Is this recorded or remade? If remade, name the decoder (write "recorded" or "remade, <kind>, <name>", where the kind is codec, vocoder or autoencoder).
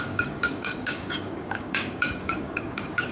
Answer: remade, codec, DAC